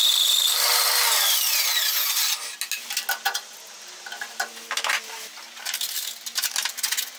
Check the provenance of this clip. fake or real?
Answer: real